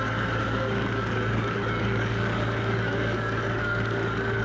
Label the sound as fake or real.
fake